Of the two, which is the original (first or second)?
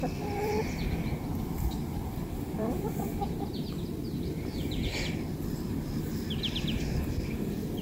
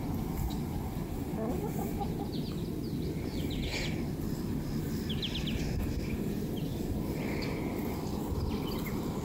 second